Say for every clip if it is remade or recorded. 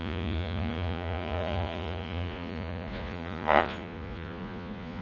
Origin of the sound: remade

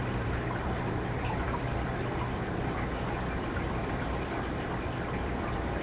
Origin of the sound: remade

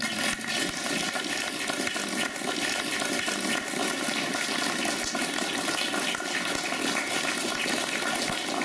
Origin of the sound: recorded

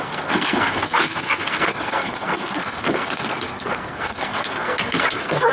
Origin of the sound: remade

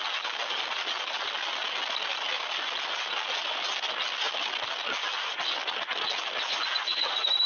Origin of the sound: recorded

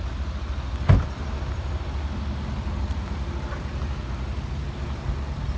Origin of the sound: recorded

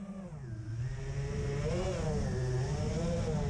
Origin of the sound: recorded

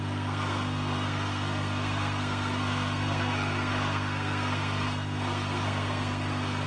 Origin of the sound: remade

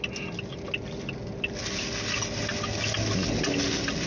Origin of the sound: recorded